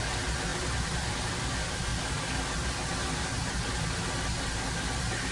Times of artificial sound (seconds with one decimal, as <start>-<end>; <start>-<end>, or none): none